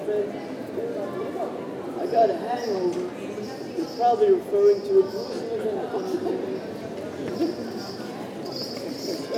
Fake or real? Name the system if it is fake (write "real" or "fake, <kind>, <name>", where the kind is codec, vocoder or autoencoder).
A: real